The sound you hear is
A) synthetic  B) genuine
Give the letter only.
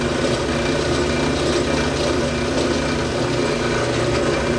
B